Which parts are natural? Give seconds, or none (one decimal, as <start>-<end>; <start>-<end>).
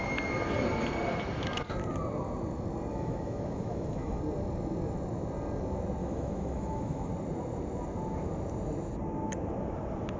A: 0.0-2.9; 4.2-6.0; 7.1-10.2